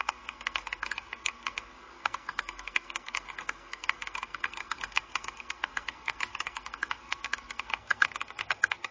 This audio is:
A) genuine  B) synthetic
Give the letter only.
B